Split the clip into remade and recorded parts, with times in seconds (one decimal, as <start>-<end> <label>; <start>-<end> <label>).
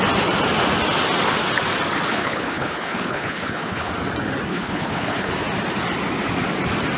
0.0-2.1 recorded; 2.1-3.9 remade; 3.9-4.5 recorded; 4.5-5.3 remade; 5.3-7.0 recorded